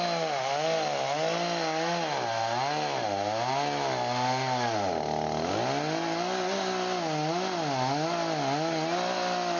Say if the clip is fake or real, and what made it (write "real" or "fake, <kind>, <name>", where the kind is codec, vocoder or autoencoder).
real